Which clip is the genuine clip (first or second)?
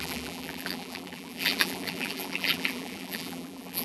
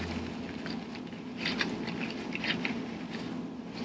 second